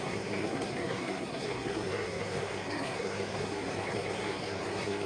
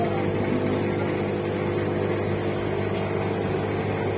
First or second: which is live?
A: second